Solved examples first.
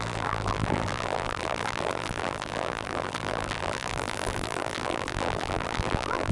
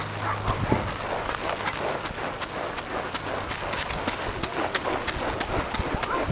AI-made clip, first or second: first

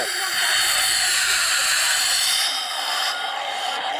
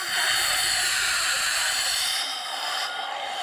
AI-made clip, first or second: second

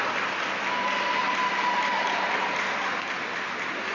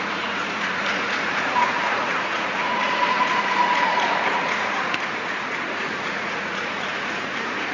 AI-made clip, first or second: second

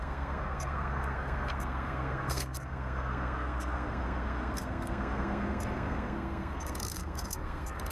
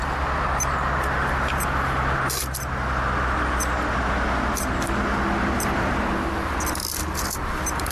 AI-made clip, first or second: first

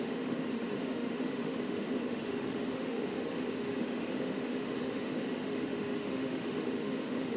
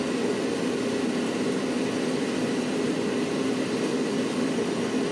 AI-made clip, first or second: first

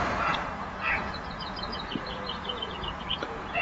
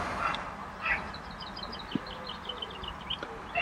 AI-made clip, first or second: first